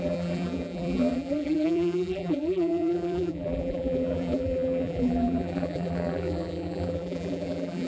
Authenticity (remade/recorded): remade